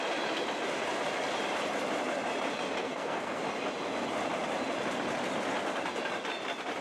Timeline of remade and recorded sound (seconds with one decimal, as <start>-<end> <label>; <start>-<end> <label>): 0.0-2.8 recorded; 2.8-3.4 remade; 3.4-6.8 recorded